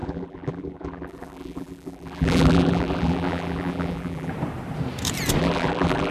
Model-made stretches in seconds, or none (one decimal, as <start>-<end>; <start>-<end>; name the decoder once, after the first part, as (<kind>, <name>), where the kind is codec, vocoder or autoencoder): 0.0-4.3 (vocoder, BigVGAN v2); 5.4-6.1